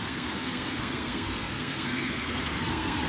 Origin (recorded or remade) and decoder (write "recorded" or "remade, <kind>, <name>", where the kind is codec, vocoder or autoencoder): remade, codec, SNAC